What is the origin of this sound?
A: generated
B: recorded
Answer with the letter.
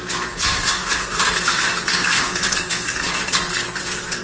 A